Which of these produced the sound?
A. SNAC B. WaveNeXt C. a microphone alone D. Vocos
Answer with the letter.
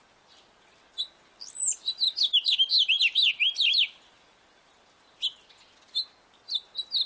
C